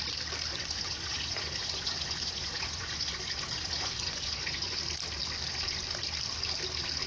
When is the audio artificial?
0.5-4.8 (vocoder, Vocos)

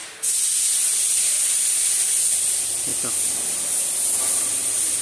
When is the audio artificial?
none